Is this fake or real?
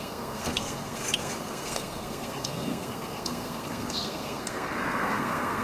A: fake